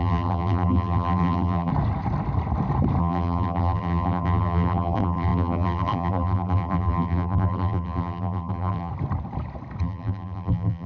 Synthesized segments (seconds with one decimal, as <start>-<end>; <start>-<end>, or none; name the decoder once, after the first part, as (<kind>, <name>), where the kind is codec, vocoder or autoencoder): 0.0-1.7 (vocoder, BigVGAN v2); 3.0-8.9; 9.8-10.9